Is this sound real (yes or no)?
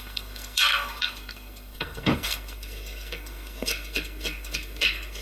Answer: no